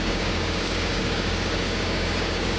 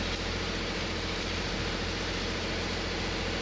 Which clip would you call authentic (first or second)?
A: second